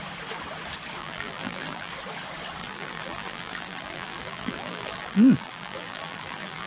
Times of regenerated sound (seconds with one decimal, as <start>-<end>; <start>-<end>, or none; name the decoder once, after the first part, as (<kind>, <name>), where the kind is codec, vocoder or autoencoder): 1.0-1.9 (vocoder, BigVGAN v2); 2.6-6.7